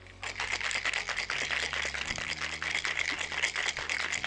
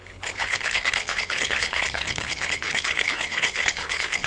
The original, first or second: first